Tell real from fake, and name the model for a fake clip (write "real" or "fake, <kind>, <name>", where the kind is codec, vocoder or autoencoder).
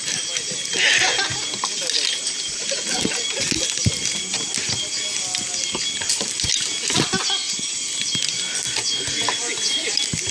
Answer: real